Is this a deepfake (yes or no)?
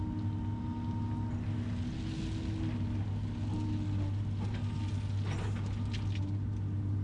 no